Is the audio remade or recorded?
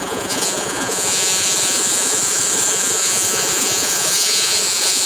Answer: remade